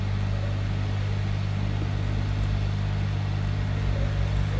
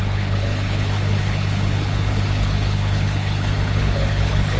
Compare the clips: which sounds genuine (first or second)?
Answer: first